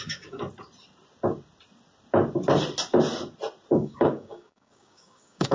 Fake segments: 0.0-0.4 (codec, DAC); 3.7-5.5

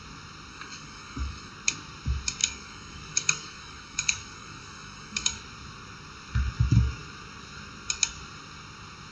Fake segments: 0.5-1.5 (codec, DAC); 2.4-5.4

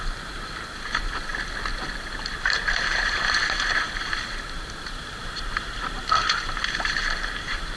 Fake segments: 0.0-1.3 (vocoder, BigVGAN v2); 1.9-7.8

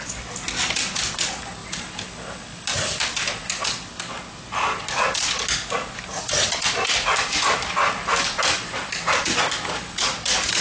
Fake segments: none

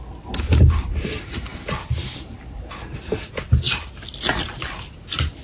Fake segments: none

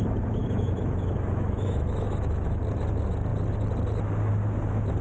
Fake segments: 0.4-2.6 (autoencoder, DAC-VAE)

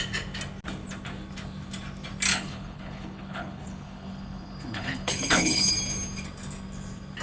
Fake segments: 2.3-5.7 (codec, HILCodec)

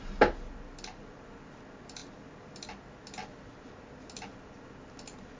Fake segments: none